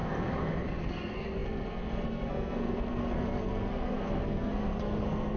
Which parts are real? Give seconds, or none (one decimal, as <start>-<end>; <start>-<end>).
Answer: 0.0-0.8